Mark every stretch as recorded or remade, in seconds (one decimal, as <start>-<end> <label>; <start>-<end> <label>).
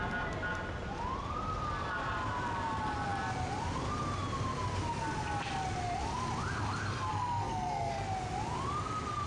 0.0-7.1 recorded; 7.1-7.9 remade; 7.9-9.3 recorded